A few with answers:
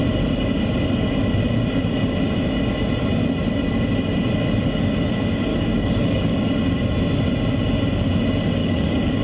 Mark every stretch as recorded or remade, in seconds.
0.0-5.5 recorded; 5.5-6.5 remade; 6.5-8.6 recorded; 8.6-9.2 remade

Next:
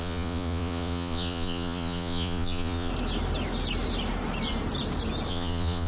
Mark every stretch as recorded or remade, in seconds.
0.0-2.9 remade; 2.9-5.3 recorded; 5.3-5.9 remade

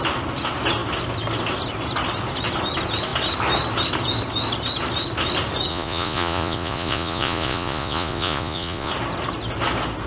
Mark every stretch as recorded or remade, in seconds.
0.0-5.7 recorded; 5.7-8.9 remade; 8.9-10.1 recorded

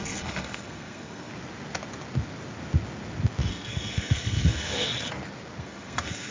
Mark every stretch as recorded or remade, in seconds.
0.0-1.3 remade; 1.3-3.5 recorded; 3.5-4.9 remade; 4.9-5.6 recorded; 5.6-6.3 remade